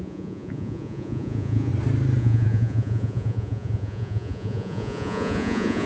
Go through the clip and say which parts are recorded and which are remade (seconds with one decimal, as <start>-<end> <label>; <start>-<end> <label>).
0.0-1.7 remade; 1.7-2.2 recorded; 2.2-5.9 remade